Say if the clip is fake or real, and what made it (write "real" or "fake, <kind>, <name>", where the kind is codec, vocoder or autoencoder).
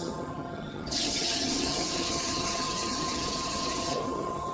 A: fake, vocoder, HiFi-GAN